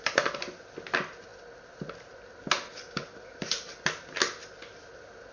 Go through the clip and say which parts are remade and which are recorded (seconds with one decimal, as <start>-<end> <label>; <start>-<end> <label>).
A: 0.0-2.7 recorded; 2.7-3.6 remade; 3.6-5.3 recorded